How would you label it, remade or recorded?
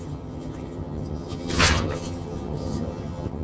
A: remade